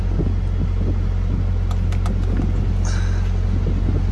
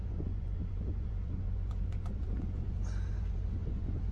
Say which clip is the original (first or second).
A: first